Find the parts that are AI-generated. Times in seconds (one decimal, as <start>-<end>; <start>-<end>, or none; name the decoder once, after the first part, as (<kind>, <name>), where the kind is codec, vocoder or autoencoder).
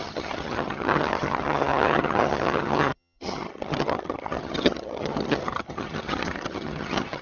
0.0-7.2 (vocoder, HiFi-GAN)